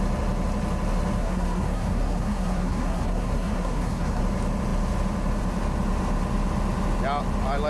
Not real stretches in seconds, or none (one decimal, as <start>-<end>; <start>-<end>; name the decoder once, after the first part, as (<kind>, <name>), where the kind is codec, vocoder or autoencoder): 1.2-4.2 (codec, SNAC)